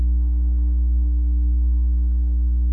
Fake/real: fake